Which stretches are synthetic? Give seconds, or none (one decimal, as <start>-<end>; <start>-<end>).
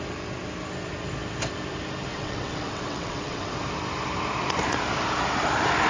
2.1-3.5